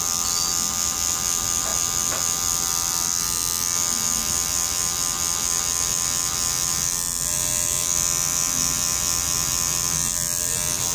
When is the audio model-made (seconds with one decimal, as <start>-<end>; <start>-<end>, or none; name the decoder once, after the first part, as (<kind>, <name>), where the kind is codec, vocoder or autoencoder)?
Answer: none